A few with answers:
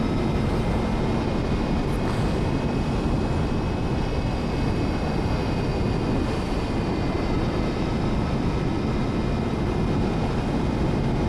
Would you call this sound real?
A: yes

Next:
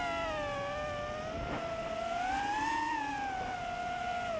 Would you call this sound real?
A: yes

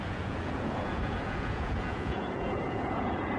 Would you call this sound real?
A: no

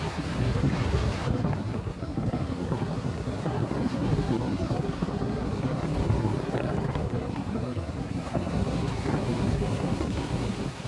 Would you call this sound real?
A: no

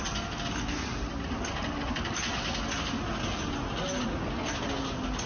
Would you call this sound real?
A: yes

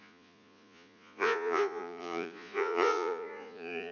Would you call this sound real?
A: no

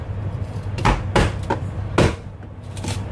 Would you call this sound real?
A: yes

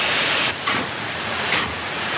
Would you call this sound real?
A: no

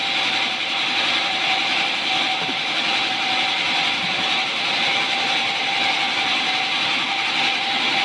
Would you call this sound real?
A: yes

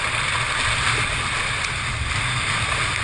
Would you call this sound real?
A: yes